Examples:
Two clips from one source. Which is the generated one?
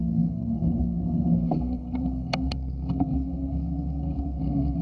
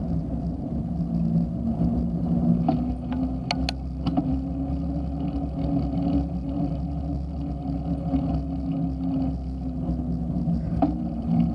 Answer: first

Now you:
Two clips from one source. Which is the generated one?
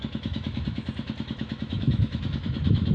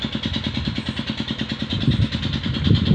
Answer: first